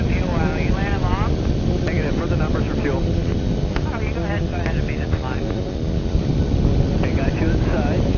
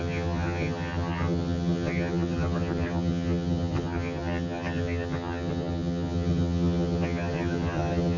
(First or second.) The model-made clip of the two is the second